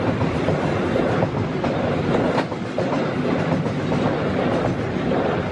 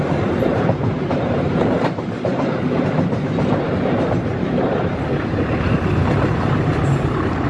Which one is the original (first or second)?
first